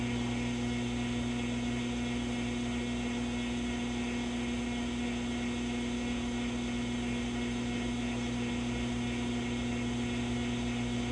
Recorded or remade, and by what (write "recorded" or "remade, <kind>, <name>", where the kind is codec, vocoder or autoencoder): recorded